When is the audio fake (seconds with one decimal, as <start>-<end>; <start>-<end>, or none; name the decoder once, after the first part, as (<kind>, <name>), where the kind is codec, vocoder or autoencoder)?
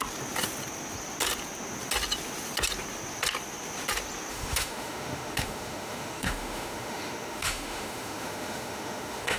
4.3-9.4 (autoencoder, DAC-VAE)